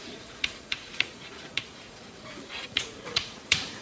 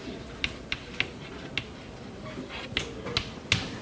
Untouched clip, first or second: second